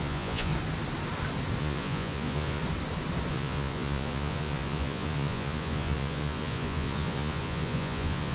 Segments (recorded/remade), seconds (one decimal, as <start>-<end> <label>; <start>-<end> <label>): 0.0-0.5 remade; 0.5-1.6 recorded; 1.6-2.6 remade; 2.6-3.3 recorded; 3.3-8.3 remade